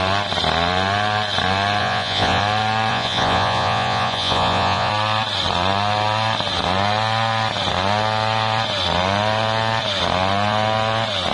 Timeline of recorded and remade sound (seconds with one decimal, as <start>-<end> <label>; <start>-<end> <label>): 0.0-1.8 recorded; 1.8-2.4 remade; 2.4-2.9 recorded; 2.9-4.9 remade; 4.9-11.3 recorded